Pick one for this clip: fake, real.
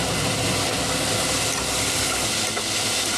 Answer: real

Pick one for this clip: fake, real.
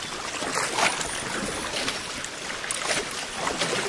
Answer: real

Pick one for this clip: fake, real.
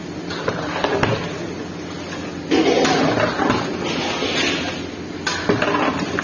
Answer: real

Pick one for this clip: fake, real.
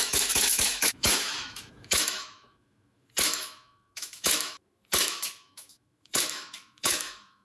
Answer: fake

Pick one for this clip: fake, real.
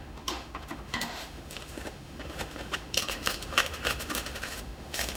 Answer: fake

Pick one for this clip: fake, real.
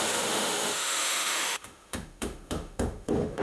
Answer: fake